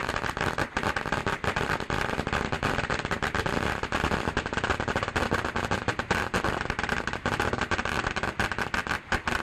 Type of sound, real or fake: real